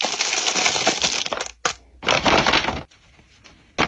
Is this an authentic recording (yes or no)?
yes